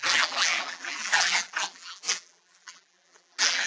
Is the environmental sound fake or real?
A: fake